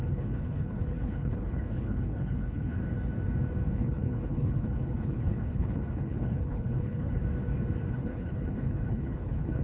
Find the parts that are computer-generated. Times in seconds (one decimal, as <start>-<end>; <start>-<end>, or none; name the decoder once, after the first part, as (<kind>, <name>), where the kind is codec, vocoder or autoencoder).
0.0-2.8 (codec, HILCodec); 3.7-7.2; 7.9-9.6